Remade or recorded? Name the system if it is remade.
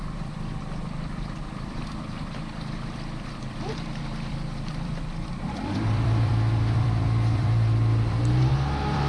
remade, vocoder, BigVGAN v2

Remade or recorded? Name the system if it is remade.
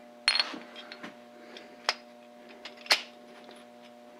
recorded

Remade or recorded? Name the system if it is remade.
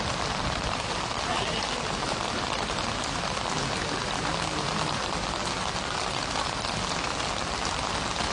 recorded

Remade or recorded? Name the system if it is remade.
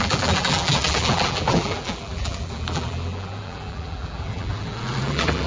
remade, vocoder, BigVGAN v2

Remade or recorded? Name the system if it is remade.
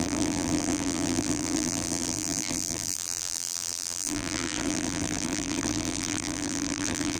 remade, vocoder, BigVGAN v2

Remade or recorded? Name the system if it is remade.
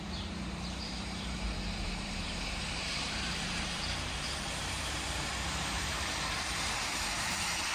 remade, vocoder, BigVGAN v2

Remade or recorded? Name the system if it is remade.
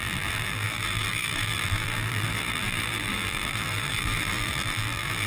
remade, vocoder, BigVGAN v2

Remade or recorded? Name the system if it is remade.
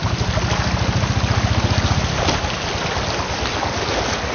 recorded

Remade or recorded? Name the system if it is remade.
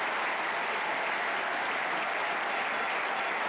recorded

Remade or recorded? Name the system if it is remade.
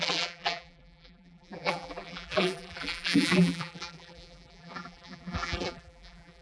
remade, vocoder, BigVGAN v2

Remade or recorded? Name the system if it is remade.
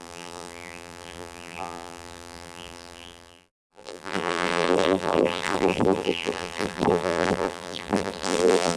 remade, vocoder, BigVGAN v2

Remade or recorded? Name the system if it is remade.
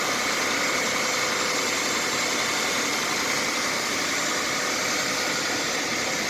recorded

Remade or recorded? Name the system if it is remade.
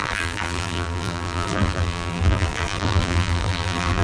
remade, vocoder, BigVGAN v2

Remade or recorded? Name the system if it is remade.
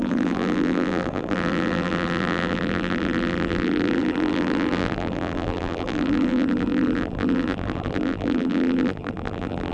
remade, vocoder, BigVGAN v2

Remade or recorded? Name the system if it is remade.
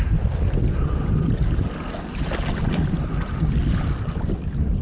recorded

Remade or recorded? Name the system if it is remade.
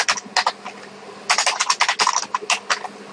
recorded